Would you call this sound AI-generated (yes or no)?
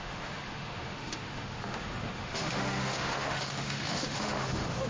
yes